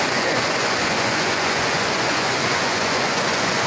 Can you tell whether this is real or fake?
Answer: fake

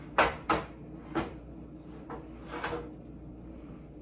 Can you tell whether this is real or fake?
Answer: real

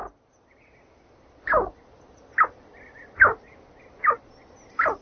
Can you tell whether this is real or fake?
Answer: real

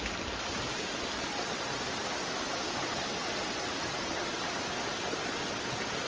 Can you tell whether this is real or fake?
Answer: real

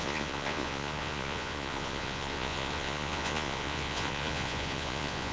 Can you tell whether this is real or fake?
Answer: fake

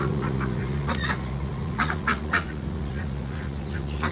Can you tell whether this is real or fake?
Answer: fake